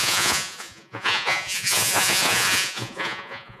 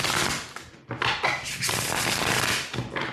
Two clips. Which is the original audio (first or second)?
second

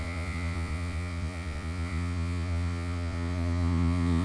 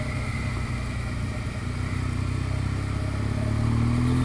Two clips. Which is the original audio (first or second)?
second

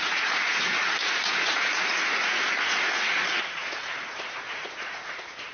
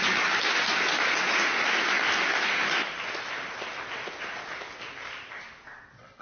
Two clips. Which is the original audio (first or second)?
second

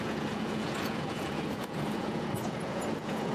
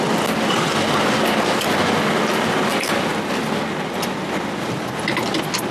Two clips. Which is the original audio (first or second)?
second